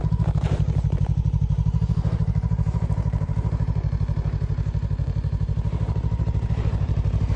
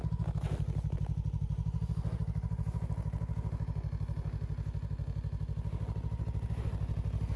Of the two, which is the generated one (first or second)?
first